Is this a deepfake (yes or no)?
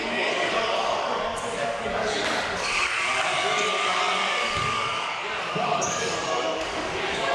yes